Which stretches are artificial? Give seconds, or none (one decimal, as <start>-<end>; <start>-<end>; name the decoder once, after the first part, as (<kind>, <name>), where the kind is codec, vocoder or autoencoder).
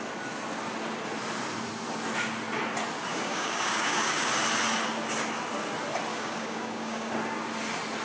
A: 3.1-4.3 (codec, DAC); 6.1-7.1